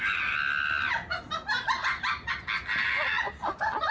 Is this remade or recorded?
recorded